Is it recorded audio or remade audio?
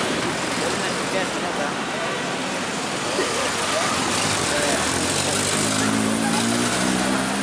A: recorded